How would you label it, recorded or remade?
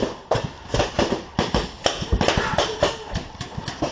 recorded